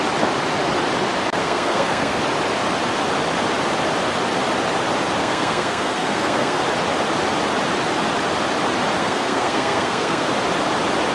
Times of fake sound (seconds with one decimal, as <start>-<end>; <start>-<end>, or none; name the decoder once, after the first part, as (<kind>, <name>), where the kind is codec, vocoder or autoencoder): 1.4-2.2 (codec, SNAC); 5.2-6.6; 9.0-10.3